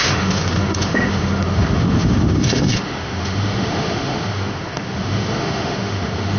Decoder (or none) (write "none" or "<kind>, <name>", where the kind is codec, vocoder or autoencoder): autoencoder, DAC-VAE